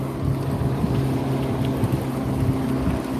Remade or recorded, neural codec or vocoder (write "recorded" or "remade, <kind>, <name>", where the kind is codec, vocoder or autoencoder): recorded